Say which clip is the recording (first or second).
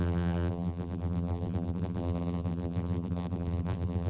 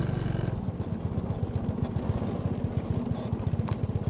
second